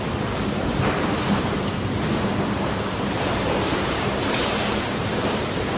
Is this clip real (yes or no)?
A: no